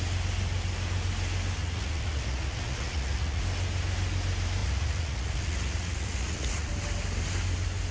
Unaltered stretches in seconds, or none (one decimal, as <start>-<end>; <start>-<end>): 0.0-1.6; 3.4-4.6; 6.7-7.9